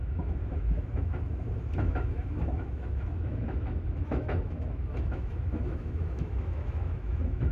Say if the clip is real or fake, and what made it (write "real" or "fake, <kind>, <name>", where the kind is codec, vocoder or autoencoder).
fake, autoencoder, DAC-VAE